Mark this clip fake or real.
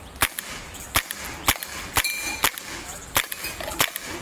fake